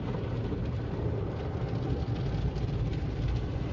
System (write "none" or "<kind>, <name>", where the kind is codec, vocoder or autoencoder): none